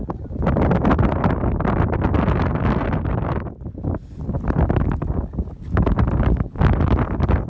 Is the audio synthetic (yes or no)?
no